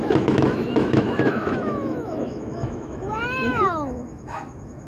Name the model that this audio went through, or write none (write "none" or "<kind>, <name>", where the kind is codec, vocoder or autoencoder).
autoencoder, DAC-VAE